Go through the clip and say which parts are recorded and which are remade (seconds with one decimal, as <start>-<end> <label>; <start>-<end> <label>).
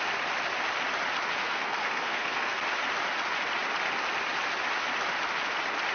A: 0.0-1.4 recorded; 1.4-2.6 remade; 2.6-5.9 recorded